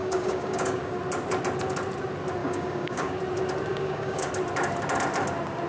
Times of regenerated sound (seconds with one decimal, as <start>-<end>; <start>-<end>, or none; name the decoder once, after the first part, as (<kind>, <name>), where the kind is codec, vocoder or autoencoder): 0.0-1.0 (codec, DAC); 2.4-3.2; 3.7-4.3